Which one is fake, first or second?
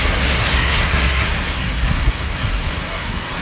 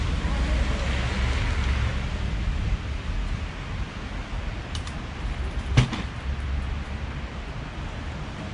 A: first